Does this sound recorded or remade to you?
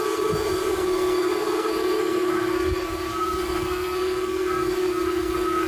remade